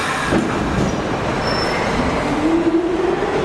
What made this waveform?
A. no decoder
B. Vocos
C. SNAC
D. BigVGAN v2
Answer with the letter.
A